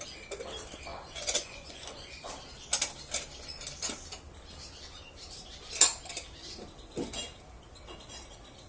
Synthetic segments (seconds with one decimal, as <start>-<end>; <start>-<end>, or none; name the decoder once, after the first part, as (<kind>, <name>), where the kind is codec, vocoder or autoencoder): 0.9-2.3 (vocoder, Vocos)

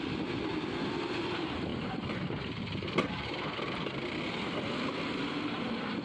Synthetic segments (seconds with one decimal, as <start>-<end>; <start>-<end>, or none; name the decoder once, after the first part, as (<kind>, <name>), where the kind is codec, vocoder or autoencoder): none

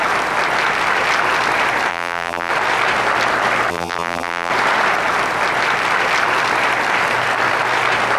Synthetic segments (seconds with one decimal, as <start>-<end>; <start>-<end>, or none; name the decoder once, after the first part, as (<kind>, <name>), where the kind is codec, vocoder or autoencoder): 1.9-2.5 (vocoder, BigVGAN v2); 3.7-4.5

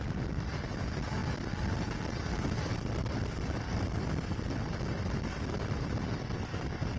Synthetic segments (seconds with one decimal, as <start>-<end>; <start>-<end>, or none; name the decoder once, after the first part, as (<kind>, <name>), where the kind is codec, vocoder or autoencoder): none

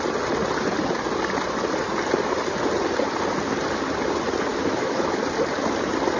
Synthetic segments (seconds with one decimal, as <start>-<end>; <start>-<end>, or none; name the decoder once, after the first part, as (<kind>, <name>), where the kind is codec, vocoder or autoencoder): 4.5-5.2 (autoencoder, DAC-VAE)

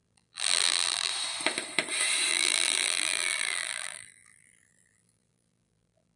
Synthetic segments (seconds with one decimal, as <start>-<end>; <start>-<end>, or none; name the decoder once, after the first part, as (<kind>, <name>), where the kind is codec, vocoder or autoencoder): 0.0-1.1 (vocoder, BigVGAN v2); 2.3-6.2

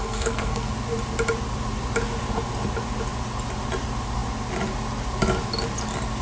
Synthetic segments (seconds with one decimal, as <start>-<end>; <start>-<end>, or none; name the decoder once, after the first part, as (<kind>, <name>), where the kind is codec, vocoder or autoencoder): 0.0-0.7 (codec, SNAC)